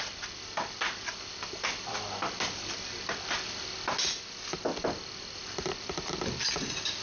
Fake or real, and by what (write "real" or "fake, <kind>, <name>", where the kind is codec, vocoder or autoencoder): real